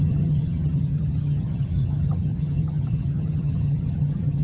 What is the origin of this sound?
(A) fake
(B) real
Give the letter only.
A